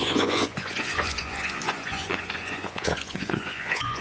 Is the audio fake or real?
fake